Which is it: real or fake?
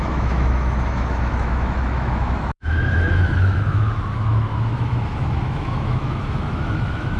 fake